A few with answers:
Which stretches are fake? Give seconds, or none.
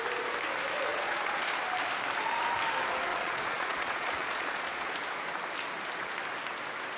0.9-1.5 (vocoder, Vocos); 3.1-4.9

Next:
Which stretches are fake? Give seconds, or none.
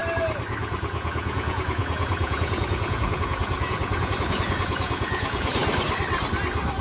0.6-5.6 (vocoder, Vocos)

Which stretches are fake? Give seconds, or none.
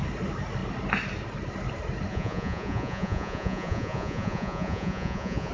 2.1-5.5 (vocoder, Vocos)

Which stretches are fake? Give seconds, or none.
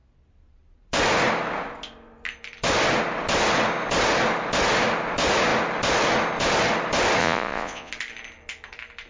7.2-7.9 (vocoder, Vocos)